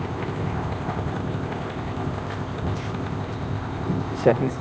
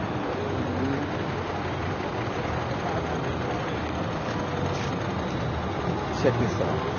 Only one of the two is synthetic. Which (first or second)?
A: first